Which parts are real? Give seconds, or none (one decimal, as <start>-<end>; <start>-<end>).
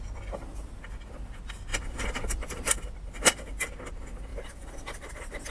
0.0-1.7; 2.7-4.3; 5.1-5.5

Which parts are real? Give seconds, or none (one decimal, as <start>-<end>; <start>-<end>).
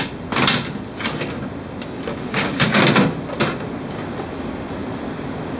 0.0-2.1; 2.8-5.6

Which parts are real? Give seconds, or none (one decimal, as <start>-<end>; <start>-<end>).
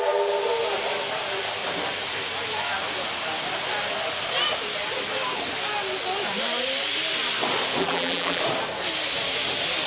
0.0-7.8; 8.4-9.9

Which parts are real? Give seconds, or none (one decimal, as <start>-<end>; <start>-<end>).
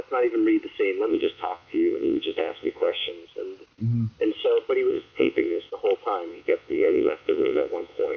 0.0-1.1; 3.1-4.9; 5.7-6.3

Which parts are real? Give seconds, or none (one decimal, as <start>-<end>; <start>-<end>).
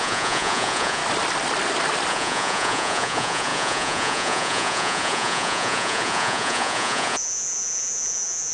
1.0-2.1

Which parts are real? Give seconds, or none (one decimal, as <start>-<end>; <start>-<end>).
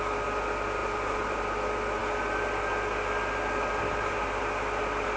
0.0-0.8; 1.4-5.2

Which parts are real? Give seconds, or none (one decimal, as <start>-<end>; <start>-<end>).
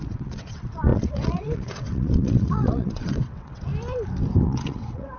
3.7-4.4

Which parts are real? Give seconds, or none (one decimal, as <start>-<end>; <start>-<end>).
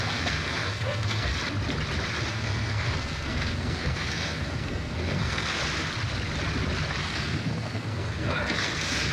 1.3-2.3; 5.6-7.0